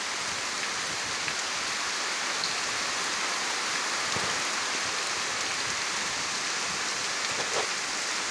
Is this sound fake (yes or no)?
no